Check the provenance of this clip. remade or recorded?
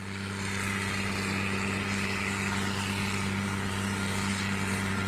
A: recorded